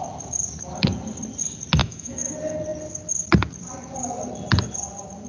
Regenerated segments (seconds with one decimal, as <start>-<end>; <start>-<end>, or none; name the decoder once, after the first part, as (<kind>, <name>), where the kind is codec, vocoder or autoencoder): 1.8-2.3 (autoencoder, DAC-VAE)

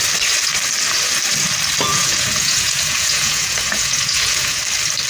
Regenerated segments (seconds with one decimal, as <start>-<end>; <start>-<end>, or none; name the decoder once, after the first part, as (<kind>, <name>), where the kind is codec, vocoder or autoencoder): 1.9-4.6 (vocoder, Vocos)

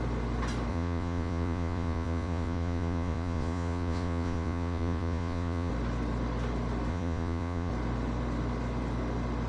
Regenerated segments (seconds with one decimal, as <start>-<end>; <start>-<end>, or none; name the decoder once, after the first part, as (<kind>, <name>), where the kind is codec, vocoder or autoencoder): 0.7-5.7 (vocoder, Vocos); 6.9-7.7

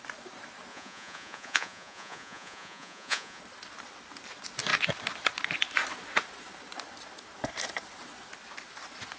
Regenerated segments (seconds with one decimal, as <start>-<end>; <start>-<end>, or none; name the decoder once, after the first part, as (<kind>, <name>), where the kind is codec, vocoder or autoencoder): 0.7-3.4 (vocoder, Vocos)

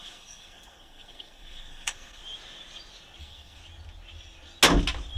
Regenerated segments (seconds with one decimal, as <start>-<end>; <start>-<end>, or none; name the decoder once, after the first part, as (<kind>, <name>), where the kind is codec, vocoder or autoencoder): 0.0-2.2 (codec, SNAC); 3.2-3.6

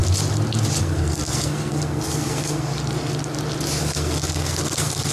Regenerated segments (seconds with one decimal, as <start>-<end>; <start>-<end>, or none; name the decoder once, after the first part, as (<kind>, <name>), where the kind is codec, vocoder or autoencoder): 0.8-2.7 (codec, SNAC); 3.8-5.1

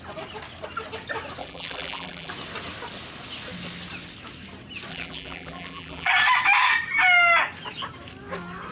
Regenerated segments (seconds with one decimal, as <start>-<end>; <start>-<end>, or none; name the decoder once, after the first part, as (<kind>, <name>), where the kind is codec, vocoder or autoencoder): 1.4-2.3 (vocoder, BigVGAN v2); 4.9-6.1

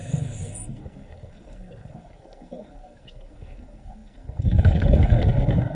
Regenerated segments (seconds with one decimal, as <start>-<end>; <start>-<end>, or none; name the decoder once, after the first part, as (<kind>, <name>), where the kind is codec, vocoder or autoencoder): 0.0-5.7 (codec, SNAC)